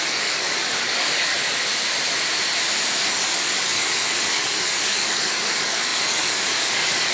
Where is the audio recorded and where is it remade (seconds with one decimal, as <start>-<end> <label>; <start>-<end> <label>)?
0.0-1.3 remade; 1.3-3.1 recorded; 3.1-7.1 remade